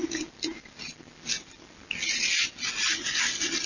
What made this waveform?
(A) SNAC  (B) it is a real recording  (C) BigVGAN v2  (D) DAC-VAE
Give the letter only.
B